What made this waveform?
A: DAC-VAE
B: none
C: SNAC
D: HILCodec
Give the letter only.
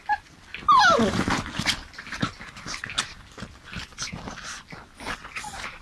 B